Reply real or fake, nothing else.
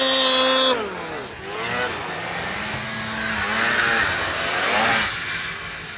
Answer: real